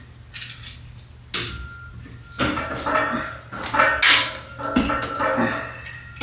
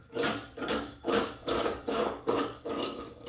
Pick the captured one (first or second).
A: first